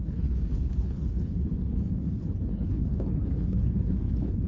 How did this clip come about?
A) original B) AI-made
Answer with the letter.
B